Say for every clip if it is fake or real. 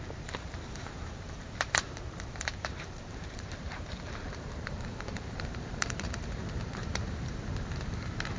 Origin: fake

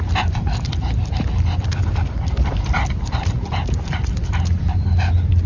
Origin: fake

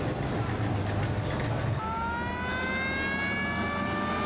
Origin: real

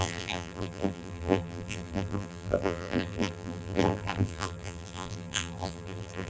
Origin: fake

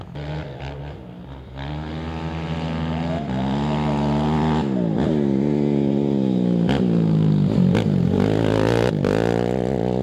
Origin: real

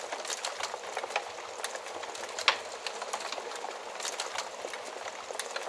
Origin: real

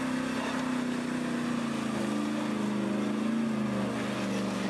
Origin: real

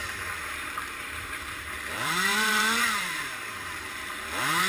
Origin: fake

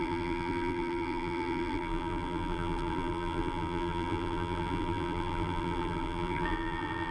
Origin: fake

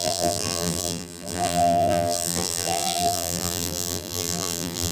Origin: fake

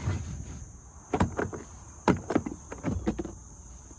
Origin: fake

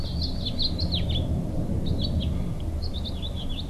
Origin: real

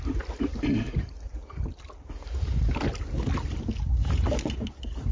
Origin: real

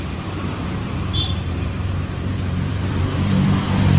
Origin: fake